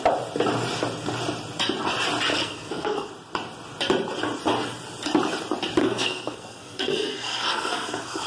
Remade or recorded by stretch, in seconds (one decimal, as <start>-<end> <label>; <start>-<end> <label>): 0.0-2.3 recorded; 2.3-3.1 remade; 3.1-5.8 recorded; 5.8-8.3 remade